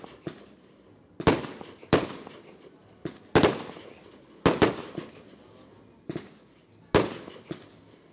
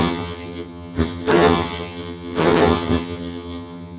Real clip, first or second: first